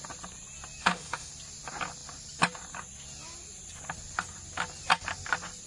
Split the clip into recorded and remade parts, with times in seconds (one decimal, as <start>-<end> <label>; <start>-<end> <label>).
0.0-0.8 recorded; 0.8-1.3 remade; 1.3-5.7 recorded